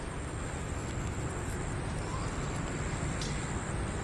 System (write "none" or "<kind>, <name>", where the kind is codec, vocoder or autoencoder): none